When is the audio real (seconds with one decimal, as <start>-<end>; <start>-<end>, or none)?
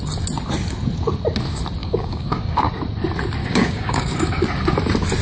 0.0-1.8; 2.7-3.4; 4.3-5.2